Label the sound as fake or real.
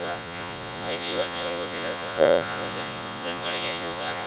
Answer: fake